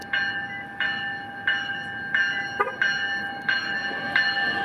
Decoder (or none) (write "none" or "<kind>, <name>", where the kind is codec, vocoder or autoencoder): none